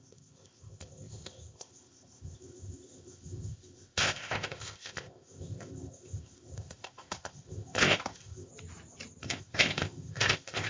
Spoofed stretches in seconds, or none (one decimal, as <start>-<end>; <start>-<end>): 0.0-8.5; 9.2-10.7